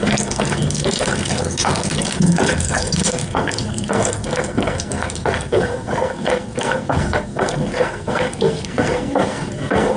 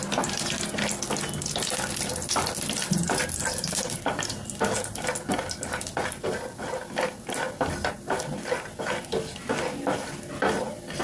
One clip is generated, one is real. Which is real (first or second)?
second